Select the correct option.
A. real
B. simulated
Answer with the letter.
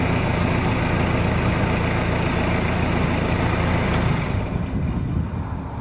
A